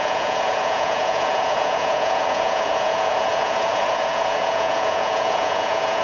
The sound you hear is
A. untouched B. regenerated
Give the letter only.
B